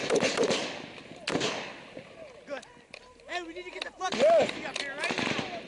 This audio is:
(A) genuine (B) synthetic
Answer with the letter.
A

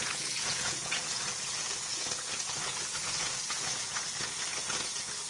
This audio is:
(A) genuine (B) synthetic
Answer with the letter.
B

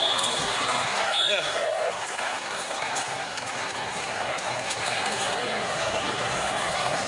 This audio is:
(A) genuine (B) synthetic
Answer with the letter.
B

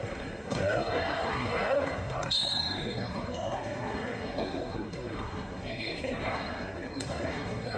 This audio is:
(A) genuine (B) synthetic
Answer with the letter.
B